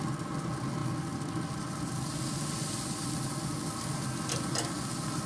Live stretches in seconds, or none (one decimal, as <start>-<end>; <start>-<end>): 0.0-5.3